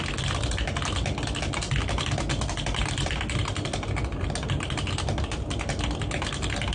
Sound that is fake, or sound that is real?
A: real